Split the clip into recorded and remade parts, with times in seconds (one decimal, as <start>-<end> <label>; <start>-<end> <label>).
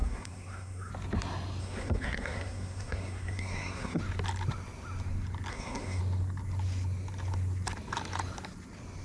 0.0-0.9 remade; 0.9-1.6 recorded; 1.6-4.0 remade; 4.0-5.5 recorded; 5.5-6.0 remade; 6.0-9.0 recorded